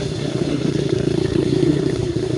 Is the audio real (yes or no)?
no